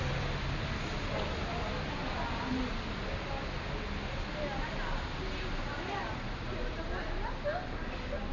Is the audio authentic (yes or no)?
yes